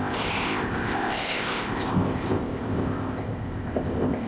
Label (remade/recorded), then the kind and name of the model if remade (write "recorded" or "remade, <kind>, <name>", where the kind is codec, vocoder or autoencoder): remade, codec, ZipCodec